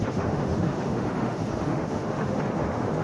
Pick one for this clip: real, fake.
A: fake